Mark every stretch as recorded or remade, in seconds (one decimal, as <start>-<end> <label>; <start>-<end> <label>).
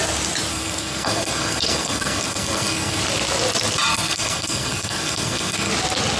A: 0.0-0.5 recorded; 0.5-3.0 remade; 3.0-3.9 recorded; 3.9-5.7 remade; 5.7-6.2 recorded